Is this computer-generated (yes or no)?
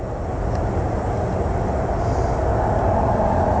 no